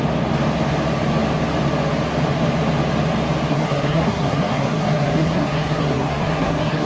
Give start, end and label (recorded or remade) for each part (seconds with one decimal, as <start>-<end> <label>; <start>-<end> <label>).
0.0-3.5 recorded; 3.5-6.9 remade